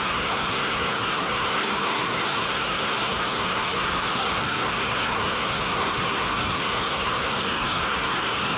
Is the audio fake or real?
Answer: fake